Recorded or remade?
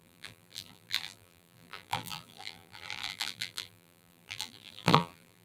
remade